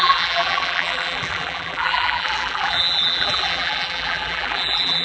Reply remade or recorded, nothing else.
remade